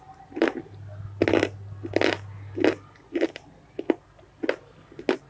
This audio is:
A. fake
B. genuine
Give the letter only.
B